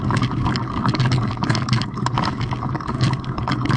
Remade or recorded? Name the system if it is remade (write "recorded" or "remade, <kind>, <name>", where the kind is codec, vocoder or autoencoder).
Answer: remade, codec, DAC